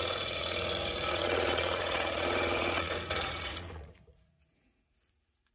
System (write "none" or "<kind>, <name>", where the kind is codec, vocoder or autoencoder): vocoder, Vocos